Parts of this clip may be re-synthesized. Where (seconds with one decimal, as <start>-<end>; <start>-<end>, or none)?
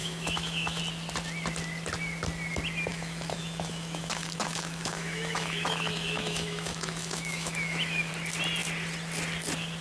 0.0-0.8; 2.9-8.1